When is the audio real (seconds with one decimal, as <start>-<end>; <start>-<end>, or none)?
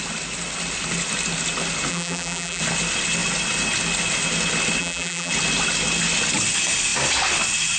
0.0-1.9; 2.6-4.8; 5.3-7.8